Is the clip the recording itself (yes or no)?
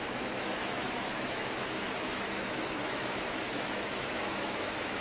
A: no